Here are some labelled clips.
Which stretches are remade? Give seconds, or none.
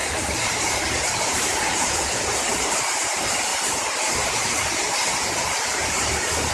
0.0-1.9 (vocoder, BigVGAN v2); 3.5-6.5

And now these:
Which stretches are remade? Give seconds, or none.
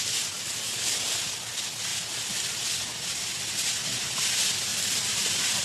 0.7-1.4 (vocoder, BigVGAN v2); 4.7-5.6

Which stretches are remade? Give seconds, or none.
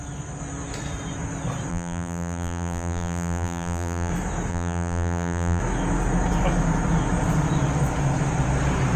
1.7-4.1 (vocoder, BigVGAN v2); 4.5-5.6